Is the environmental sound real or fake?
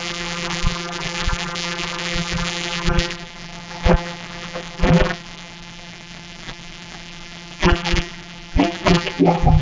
fake